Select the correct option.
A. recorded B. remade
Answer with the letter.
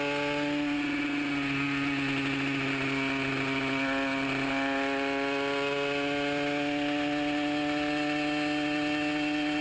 A